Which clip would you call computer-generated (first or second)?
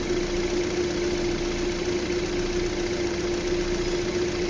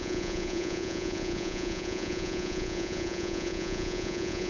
second